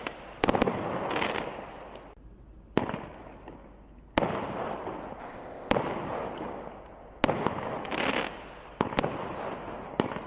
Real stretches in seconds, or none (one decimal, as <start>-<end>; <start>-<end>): 0.0-5.2; 5.7-10.3